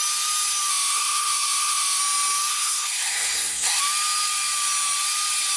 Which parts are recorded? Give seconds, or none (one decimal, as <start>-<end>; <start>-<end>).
0.0-0.7; 2.0-2.5; 3.8-5.6